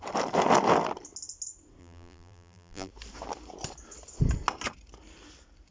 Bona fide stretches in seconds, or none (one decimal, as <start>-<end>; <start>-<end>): 0.0-1.8; 2.9-5.7